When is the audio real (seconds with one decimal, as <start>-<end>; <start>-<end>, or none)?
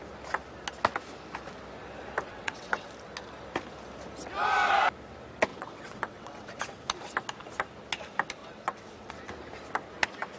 0.0-2.3; 2.9-5.5; 6.6-8.4; 9.1-10.4